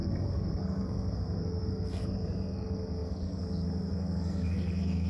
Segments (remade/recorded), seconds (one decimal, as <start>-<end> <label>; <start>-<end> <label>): 0.0-5.1 remade